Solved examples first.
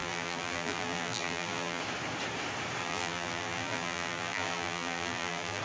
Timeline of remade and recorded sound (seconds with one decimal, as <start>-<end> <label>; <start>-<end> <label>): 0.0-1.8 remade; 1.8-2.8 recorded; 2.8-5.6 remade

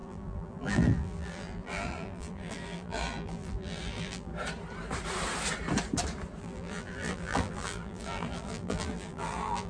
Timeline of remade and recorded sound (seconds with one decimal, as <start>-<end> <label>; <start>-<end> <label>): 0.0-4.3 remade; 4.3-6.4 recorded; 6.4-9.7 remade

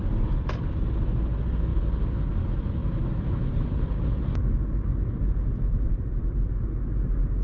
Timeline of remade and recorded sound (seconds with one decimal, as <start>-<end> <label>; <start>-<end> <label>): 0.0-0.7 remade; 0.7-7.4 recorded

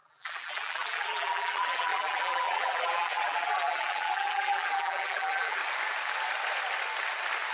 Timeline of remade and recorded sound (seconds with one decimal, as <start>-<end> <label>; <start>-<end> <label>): 0.0-5.6 remade; 5.6-7.5 recorded

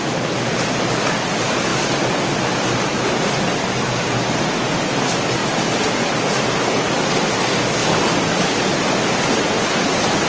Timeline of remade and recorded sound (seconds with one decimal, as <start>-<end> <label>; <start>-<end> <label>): 0.0-7.8 recorded; 7.8-9.1 remade; 9.1-10.3 recorded